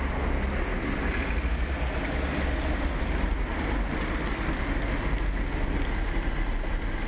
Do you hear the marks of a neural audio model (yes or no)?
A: no